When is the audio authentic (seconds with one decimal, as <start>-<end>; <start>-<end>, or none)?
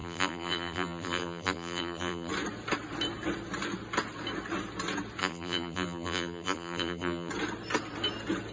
2.3-5.2; 7.3-8.5